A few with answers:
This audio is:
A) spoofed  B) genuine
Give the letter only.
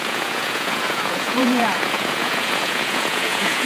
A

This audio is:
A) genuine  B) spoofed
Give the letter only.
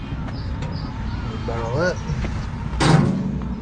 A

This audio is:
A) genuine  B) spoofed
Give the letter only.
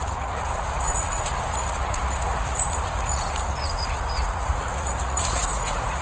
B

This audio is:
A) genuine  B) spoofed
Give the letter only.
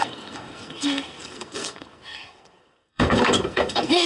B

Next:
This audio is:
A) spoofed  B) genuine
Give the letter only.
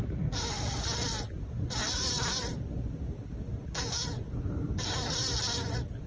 B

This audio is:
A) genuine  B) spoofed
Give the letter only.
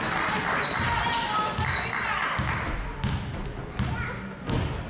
A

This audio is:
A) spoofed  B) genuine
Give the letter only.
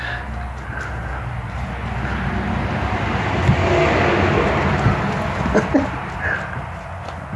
B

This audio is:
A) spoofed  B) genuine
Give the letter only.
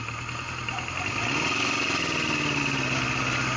B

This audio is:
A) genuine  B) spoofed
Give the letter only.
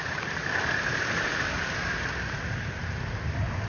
B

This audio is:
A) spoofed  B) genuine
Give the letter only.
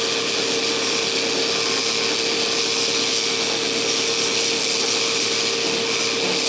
B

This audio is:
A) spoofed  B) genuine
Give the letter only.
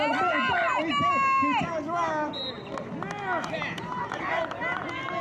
B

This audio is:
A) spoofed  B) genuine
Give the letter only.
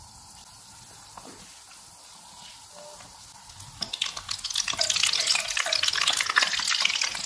B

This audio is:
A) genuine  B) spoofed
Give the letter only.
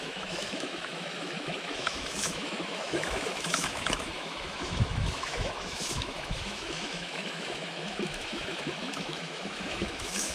B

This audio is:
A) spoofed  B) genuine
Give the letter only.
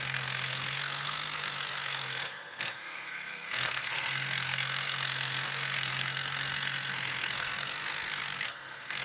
A